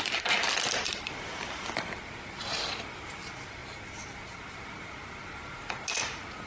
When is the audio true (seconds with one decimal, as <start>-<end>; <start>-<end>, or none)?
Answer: 3.6-6.5

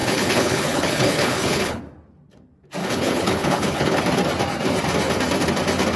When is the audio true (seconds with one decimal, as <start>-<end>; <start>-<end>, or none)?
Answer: 1.8-2.8; 4.0-6.0

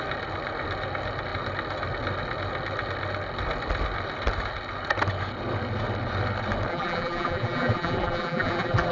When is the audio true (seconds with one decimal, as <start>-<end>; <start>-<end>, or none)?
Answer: 0.0-6.7

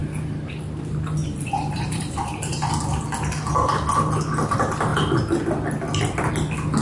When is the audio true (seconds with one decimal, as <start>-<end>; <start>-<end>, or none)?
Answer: 0.0-1.2; 2.7-6.8

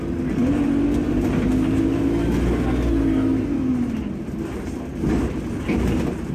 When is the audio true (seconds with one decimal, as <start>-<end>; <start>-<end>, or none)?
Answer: 0.0-6.3

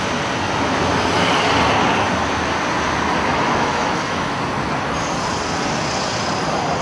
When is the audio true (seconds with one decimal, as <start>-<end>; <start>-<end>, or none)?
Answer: 0.0-3.3; 4.4-6.8